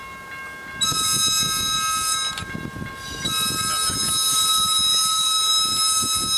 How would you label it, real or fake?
real